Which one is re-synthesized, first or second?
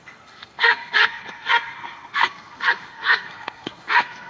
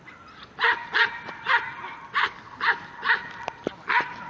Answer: first